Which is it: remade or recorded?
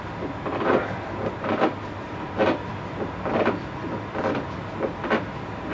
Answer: recorded